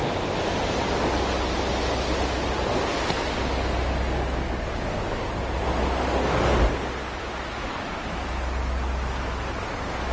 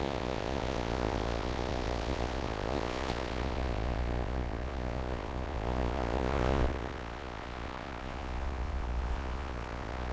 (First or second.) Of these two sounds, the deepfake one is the second